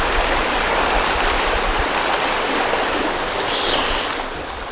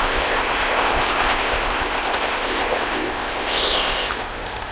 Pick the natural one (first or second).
first